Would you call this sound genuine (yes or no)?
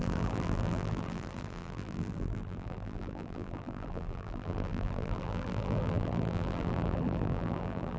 no